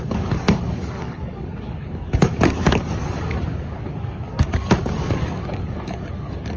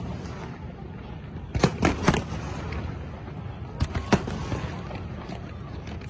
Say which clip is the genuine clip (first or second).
second